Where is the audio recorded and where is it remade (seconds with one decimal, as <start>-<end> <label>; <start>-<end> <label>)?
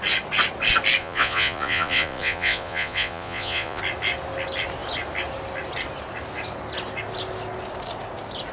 0.0-1.0 recorded; 1.0-3.8 remade; 3.8-8.5 recorded